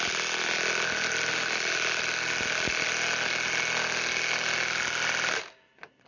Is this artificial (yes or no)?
no